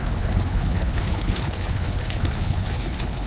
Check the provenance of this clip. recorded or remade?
remade